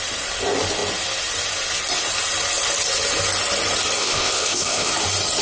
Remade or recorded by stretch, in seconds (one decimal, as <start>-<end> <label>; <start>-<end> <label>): 0.0-4.0 recorded; 4.0-4.9 remade; 4.9-5.4 recorded